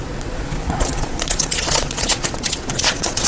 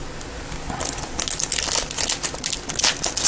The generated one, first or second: first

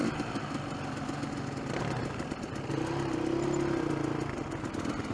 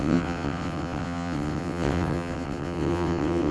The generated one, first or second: second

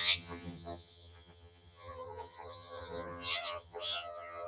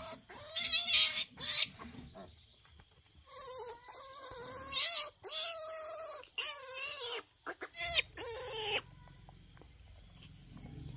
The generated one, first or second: first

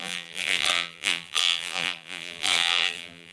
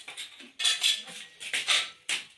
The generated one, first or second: first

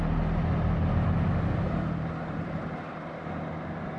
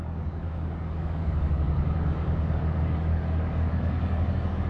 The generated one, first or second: second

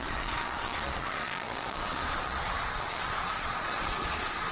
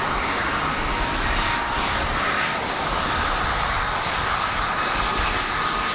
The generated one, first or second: first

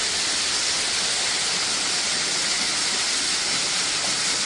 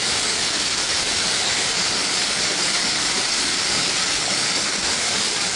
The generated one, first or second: second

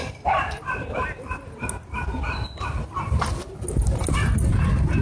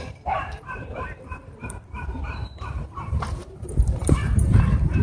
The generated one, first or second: second